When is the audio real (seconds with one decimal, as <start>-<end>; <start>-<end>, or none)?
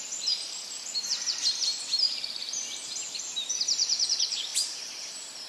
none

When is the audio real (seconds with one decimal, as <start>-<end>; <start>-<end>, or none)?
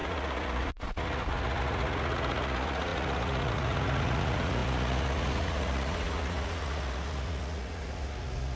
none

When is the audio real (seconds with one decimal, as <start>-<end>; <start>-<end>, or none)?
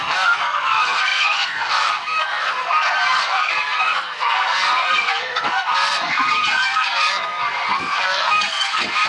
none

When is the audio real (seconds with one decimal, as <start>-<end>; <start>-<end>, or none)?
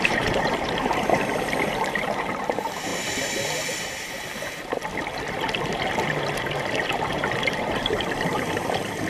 2.9-3.8; 4.8-6.9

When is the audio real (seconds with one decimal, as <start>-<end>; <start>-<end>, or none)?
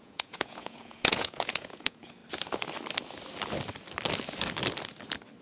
2.2-5.4